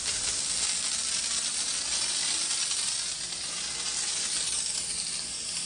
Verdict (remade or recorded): recorded